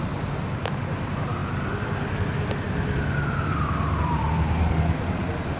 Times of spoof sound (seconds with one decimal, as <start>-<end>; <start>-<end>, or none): 1.4-2.2; 3.5-4.7